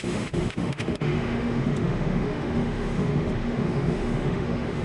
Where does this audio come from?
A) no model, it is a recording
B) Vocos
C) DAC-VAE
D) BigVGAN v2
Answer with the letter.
C